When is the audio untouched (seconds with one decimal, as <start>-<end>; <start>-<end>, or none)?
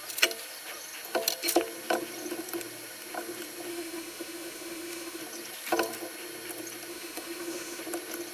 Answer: 0.0-3.7; 5.2-6.9; 7.8-8.3